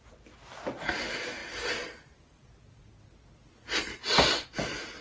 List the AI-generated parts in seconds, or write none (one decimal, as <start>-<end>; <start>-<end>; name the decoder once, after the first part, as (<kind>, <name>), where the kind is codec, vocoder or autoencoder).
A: none